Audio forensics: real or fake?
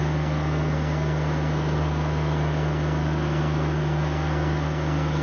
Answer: fake